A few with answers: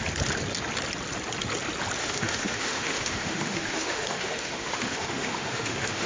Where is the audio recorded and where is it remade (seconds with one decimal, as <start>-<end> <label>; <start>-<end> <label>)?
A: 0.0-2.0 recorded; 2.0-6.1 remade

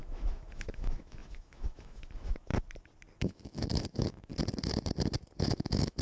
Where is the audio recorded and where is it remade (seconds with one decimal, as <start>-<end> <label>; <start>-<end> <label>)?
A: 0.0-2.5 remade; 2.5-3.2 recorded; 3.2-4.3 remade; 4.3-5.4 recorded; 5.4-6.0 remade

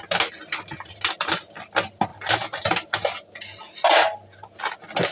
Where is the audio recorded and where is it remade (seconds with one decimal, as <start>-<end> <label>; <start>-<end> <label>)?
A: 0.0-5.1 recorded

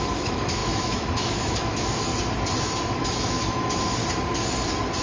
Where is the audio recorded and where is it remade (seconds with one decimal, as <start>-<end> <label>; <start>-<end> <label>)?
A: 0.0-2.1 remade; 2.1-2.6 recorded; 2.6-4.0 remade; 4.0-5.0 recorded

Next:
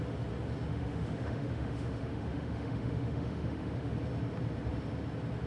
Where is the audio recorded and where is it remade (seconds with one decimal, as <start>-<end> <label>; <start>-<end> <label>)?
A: 0.0-0.7 recorded; 0.7-3.9 remade; 3.9-5.5 recorded

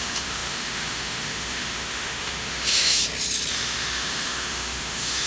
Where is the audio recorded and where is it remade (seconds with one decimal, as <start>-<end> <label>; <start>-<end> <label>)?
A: 0.0-3.0 remade; 3.0-3.5 recorded; 3.5-5.3 remade

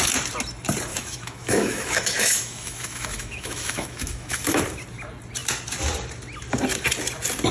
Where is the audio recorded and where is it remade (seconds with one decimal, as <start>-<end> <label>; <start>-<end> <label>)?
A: 0.0-0.9 recorded; 0.9-4.6 remade; 4.6-7.5 recorded